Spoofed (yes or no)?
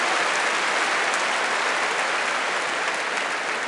no